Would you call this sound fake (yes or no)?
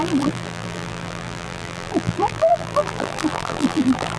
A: yes